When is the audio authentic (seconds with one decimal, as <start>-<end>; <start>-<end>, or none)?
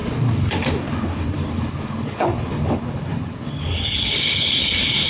none